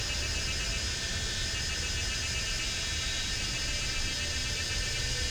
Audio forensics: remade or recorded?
recorded